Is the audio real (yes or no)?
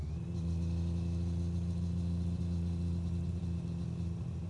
yes